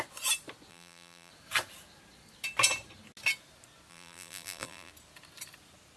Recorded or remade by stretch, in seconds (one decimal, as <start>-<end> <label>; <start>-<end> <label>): 0.0-0.7 recorded; 0.7-1.3 remade; 1.3-3.9 recorded; 3.9-4.9 remade; 4.9-6.0 recorded